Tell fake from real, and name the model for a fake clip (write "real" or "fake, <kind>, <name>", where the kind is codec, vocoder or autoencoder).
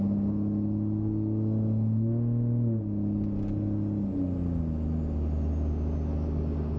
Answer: real